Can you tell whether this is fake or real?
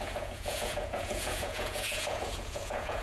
fake